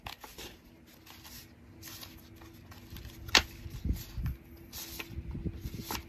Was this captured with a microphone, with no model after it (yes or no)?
yes